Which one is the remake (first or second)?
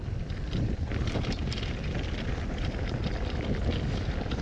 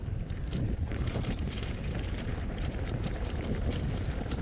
second